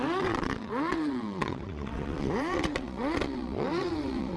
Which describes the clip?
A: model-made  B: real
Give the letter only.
A